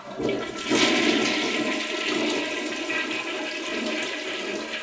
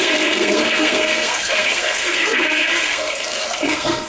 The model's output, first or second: second